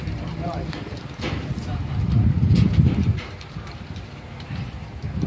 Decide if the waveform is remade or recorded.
remade